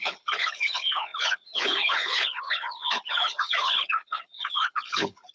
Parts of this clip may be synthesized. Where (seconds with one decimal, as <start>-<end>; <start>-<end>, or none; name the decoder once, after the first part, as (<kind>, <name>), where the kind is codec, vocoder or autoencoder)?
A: 0.0-5.3 (codec, HILCodec)